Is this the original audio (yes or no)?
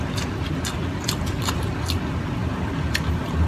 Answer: no